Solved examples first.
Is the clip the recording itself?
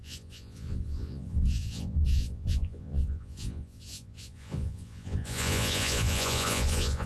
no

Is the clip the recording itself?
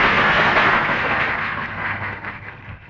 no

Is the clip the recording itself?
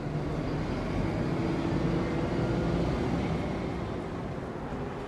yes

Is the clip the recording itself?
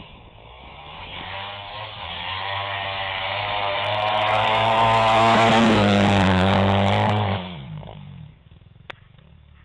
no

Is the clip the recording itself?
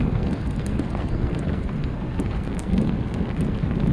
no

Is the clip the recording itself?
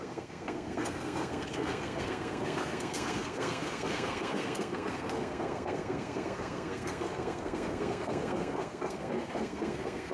no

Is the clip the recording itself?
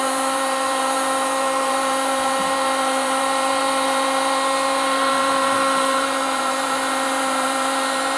no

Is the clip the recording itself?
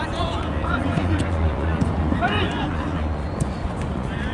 no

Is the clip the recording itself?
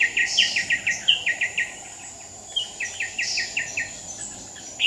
yes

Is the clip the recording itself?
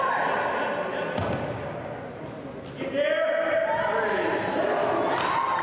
yes